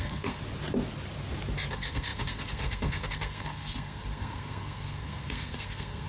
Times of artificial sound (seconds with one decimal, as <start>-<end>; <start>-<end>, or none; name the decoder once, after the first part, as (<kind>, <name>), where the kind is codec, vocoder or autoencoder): 0.0-0.4 (codec, SNAC); 1.7-6.1